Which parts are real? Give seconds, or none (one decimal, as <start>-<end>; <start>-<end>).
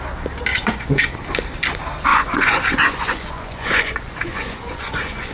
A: 0.0-0.5; 1.1-2.1